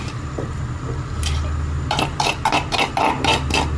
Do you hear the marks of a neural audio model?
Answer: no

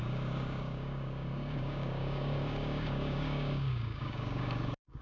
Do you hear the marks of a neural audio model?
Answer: yes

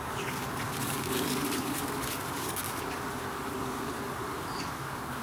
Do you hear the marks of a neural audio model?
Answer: yes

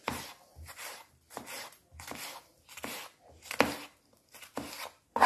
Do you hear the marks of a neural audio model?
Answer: no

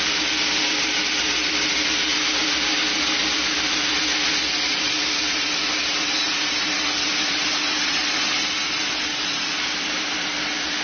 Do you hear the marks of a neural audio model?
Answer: no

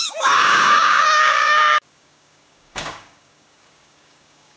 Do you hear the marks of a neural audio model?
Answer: yes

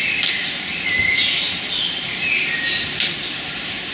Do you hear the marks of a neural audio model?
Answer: no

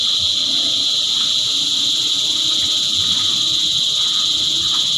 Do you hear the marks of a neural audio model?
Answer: no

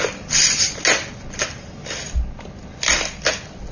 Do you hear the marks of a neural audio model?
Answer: no